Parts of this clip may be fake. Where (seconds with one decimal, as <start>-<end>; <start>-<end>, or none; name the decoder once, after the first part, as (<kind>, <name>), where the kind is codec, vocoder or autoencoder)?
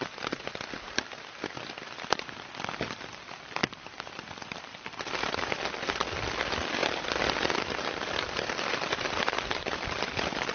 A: 3.6-4.6 (vocoder, BigVGAN v2); 6.8-10.0